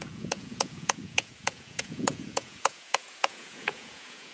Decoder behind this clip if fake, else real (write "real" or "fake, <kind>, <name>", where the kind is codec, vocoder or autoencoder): fake, vocoder, Vocos